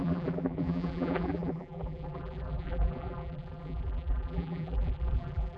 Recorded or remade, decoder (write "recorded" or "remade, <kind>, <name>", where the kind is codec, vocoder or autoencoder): remade, vocoder, BigVGAN v2